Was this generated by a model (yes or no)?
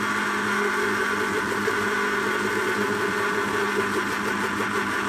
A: no